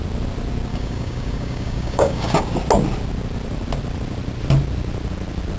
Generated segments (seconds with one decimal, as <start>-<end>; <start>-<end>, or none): 0.7-2.4